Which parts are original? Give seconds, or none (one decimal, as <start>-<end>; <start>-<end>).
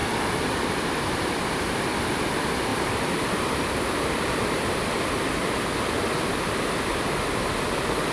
2.0-2.7; 5.6-8.1